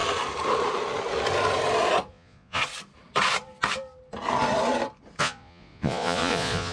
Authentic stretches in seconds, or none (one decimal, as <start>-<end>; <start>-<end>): 0.0-2.1; 2.6-5.2